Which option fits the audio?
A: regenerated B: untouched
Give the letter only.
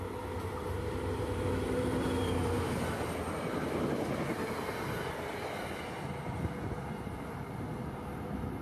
B